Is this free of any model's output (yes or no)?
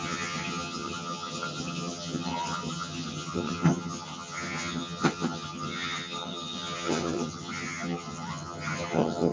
no